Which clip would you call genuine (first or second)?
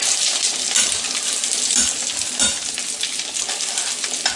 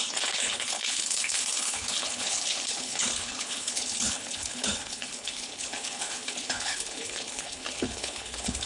first